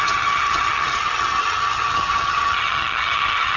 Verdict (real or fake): fake